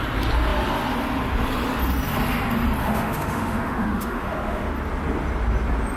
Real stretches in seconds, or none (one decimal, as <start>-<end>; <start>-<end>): 0.0-2.8; 4.7-6.0